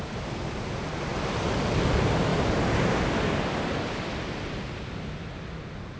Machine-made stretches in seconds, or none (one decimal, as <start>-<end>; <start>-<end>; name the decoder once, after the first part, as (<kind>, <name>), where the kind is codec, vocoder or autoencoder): none

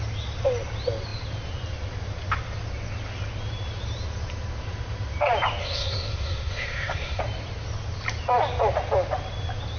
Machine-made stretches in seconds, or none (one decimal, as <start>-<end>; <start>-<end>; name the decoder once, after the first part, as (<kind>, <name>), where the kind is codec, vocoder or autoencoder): 5.6-7.2 (codec, SNAC)

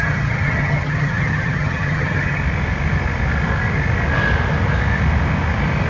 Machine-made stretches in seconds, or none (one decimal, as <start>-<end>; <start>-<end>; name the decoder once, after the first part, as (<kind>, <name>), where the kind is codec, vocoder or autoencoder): 0.0-2.4 (vocoder, HiFi-GAN)

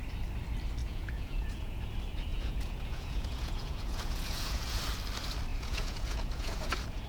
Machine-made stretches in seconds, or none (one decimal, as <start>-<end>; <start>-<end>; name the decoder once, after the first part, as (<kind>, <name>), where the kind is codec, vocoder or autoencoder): 0.8-1.8 (vocoder, Vocos); 2.3-4.8; 5.5-7.1

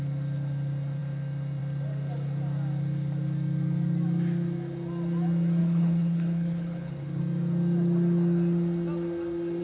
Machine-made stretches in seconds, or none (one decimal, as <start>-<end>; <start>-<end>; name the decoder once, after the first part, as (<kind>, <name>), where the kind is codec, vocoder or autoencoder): 5.6-7.2 (codec, HILCodec)

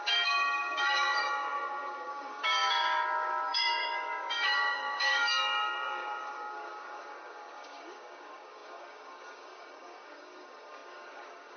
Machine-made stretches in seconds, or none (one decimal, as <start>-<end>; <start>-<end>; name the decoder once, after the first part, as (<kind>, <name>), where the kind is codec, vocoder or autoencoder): 0.0-11.6 (codec, DAC)

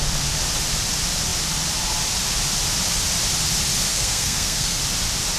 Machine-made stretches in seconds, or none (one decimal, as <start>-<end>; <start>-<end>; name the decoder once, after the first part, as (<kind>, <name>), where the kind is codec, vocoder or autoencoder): 3.9-4.8 (codec, SNAC)